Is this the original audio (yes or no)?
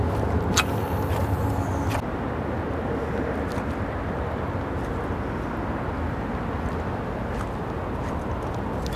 yes